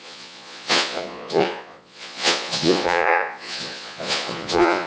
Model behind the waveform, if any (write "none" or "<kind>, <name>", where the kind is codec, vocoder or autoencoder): vocoder, Vocos